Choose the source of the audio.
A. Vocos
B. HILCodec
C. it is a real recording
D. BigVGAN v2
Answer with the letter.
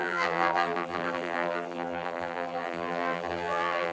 D